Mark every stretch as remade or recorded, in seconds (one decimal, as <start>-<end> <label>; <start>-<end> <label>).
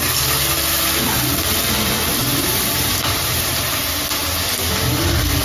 0.0-2.2 recorded; 2.2-3.8 remade; 3.8-4.2 recorded; 4.2-5.0 remade; 5.0-5.4 recorded